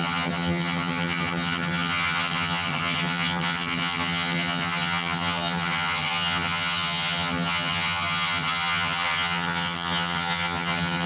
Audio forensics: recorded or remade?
remade